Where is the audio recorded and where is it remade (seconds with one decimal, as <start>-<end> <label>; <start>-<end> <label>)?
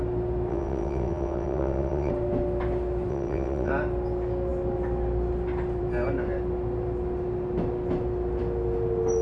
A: 0.0-0.5 recorded; 0.5-2.1 remade; 2.1-3.1 recorded; 3.1-3.7 remade; 3.7-9.2 recorded